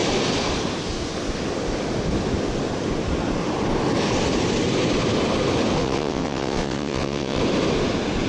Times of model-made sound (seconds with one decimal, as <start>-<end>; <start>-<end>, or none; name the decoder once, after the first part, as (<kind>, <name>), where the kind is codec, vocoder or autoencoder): 5.8-7.4 (vocoder, WaveNeXt)